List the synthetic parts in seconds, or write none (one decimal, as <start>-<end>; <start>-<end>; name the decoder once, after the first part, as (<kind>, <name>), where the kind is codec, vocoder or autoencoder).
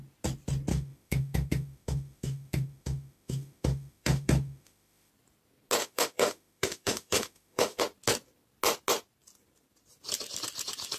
0.7-5.1 (autoencoder, DAC-VAE); 5.8-7.8